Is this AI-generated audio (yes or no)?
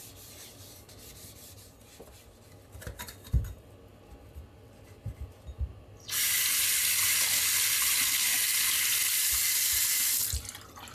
no